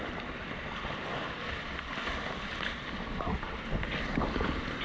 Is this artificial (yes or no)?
no